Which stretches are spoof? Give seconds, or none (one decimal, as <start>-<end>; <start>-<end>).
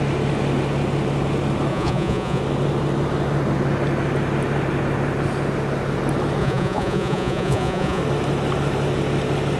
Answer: 1.7-2.4; 6.4-8.0